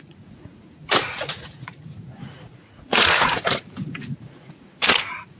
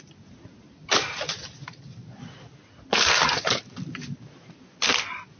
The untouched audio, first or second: second